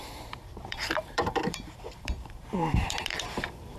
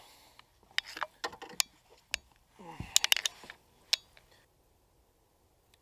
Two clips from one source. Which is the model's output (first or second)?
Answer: first